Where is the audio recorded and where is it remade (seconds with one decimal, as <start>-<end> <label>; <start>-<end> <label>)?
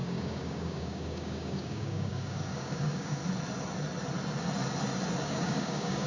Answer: 0.0-3.2 remade; 3.2-5.2 recorded; 5.2-6.1 remade